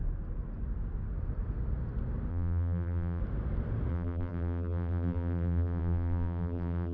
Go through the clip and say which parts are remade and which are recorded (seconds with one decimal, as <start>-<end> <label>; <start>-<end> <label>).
0.0-2.3 recorded; 2.3-3.2 remade; 3.2-3.9 recorded; 3.9-6.9 remade